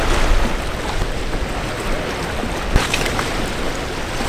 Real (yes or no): yes